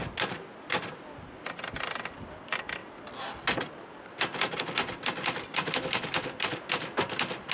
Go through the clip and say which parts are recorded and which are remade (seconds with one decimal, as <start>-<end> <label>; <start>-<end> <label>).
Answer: 0.0-7.5 recorded